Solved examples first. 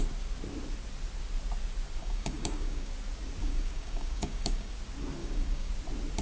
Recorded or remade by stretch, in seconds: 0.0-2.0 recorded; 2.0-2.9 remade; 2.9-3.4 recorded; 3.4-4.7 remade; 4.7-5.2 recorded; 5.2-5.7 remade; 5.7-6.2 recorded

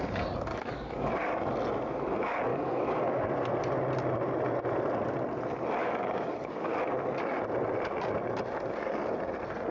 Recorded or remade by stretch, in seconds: 0.0-0.5 recorded; 0.5-1.1 remade; 1.1-2.5 recorded; 2.5-3.3 remade; 3.3-5.8 recorded; 5.8-6.7 remade; 6.7-9.7 recorded